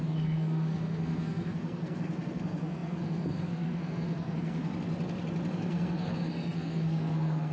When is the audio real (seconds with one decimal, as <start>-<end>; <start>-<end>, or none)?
4.6-5.5